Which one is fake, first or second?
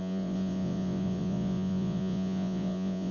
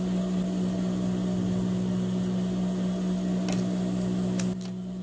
first